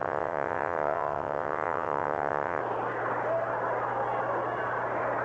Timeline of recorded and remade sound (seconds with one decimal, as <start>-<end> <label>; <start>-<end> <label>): 0.0-2.6 remade; 2.6-5.2 recorded